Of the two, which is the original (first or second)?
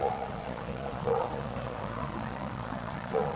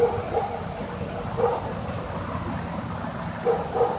second